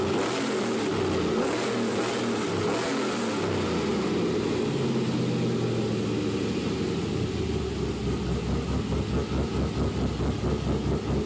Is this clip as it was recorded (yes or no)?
yes